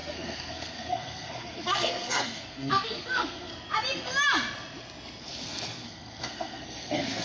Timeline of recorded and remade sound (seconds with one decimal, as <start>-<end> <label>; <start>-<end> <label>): 0.0-3.5 remade; 3.5-5.2 recorded; 5.2-7.2 remade